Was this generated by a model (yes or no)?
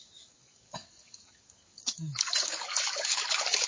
yes